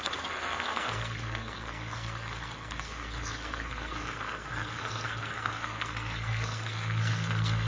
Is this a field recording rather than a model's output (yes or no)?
no